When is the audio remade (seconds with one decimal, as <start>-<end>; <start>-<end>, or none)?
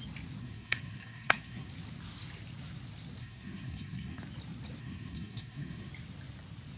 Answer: 0.4-1.7; 3.2-4.2; 4.8-5.9